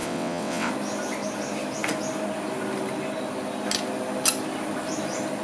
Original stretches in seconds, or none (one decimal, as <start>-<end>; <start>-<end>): 0.7-5.4